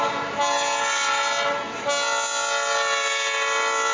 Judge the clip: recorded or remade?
recorded